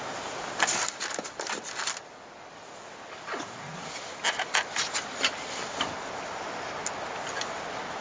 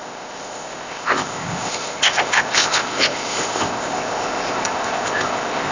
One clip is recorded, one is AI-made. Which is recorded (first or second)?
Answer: first